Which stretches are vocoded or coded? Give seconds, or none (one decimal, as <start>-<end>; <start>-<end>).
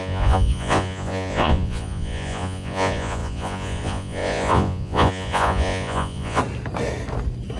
0.0-6.4